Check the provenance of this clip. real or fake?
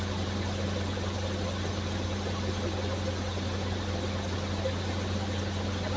real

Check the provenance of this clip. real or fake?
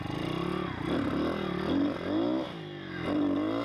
real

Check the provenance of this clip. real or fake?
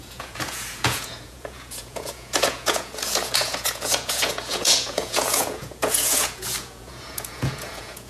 fake